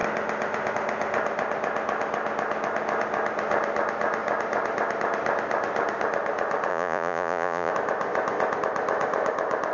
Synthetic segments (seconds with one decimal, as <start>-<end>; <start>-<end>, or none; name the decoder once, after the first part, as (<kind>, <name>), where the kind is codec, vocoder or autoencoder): 6.7-7.7 (vocoder, Vocos)